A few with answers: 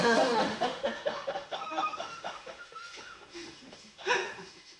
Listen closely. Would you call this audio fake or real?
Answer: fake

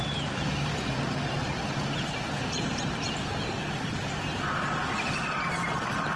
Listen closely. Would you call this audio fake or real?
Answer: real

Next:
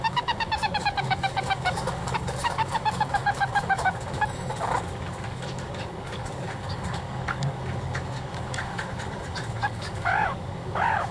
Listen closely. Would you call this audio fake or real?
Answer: fake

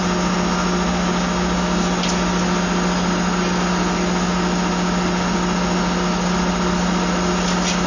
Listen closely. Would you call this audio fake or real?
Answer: real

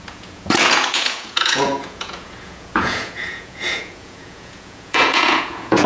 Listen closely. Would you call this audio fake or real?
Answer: fake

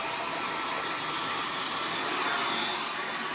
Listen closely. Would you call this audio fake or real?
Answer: fake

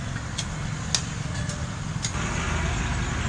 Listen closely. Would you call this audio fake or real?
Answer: real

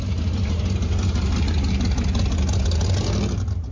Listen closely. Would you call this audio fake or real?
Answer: real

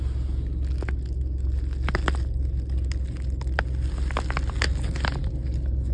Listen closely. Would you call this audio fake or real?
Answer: real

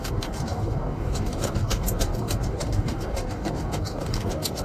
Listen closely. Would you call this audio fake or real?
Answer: fake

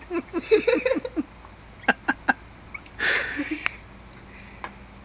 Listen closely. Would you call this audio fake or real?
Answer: real